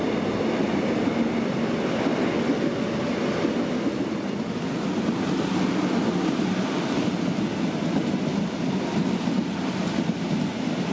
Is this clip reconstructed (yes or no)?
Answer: no